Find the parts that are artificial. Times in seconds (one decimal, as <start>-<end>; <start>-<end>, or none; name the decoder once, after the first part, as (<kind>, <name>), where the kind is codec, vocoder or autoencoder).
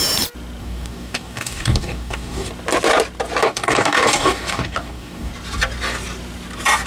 0.6-2.5 (codec, DAC); 3.4-5.3